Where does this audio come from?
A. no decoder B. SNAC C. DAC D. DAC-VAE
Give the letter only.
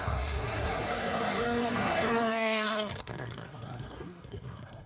B